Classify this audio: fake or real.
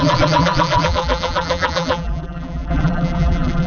fake